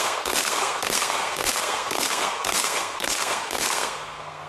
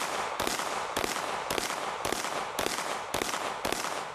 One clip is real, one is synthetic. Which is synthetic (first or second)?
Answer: first